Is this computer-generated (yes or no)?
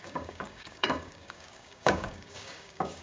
yes